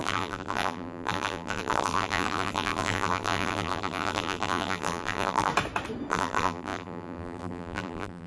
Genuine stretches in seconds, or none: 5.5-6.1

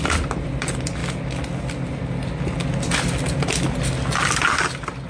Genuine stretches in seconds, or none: 0.0-5.1

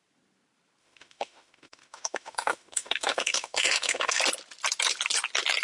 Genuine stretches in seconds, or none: 0.0-0.8; 4.2-5.6

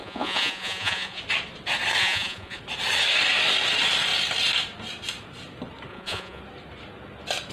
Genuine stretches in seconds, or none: 1.2-2.0; 2.6-5.9; 6.4-7.5

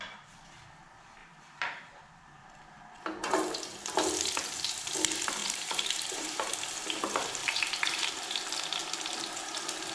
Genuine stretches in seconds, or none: 0.0-1.2; 2.6-5.4; 6.7-7.4; 8.1-9.9

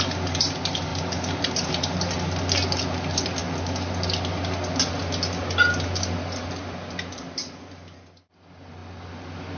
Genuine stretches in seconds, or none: 0.0-9.6